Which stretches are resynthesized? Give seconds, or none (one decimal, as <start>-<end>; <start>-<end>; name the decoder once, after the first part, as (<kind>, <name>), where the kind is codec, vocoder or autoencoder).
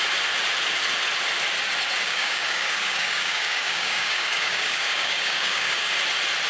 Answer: 2.0-5.9 (codec, DAC)